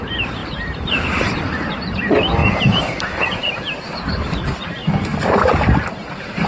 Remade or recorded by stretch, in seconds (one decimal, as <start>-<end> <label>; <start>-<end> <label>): 0.0-5.1 remade; 5.1-5.9 recorded; 5.9-6.5 remade